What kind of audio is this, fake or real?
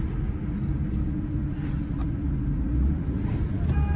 real